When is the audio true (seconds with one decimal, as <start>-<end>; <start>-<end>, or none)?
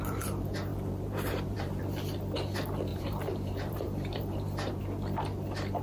0.0-0.7; 1.8-2.9; 4.8-5.8